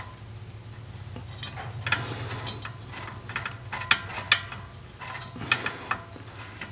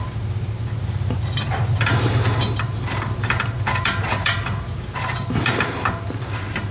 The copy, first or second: second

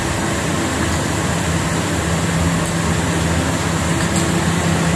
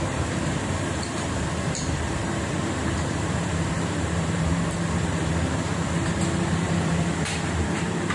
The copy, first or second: second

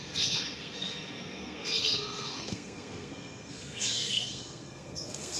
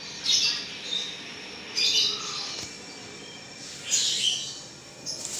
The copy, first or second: first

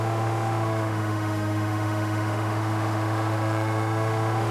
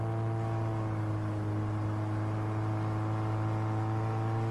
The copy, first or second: first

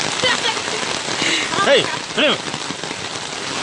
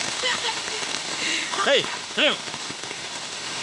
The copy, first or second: second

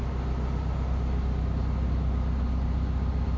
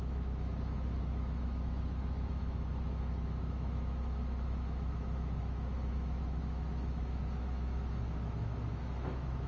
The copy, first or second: second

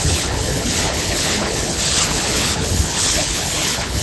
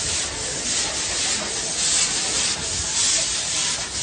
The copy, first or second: first